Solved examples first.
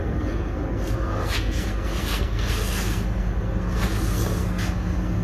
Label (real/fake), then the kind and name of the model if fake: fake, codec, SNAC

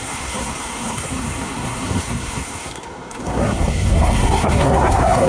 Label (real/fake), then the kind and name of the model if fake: fake, codec, SNAC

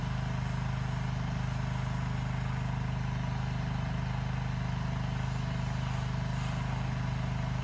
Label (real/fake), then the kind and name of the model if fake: real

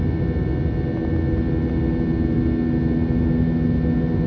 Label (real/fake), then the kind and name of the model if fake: real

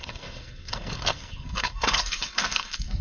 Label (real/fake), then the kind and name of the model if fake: fake, codec, SNAC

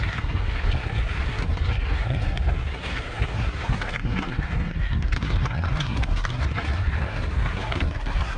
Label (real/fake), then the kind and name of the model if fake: fake, codec, SNAC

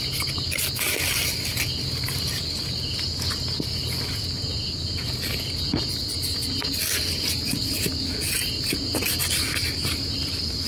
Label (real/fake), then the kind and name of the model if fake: real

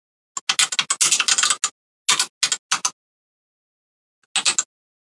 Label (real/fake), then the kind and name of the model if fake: real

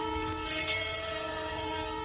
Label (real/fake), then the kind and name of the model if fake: fake, codec, SNAC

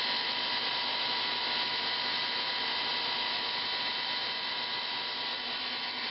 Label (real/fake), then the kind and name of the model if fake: real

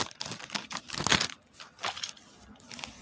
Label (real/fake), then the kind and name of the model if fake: real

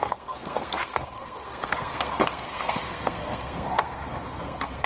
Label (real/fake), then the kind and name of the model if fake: fake, codec, SNAC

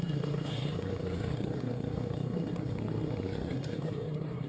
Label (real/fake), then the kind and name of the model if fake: fake, codec, SNAC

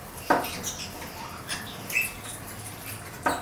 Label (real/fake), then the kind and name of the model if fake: real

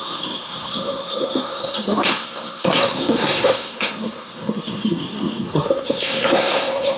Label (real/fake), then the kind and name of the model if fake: fake, codec, SNAC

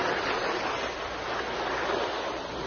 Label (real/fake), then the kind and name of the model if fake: real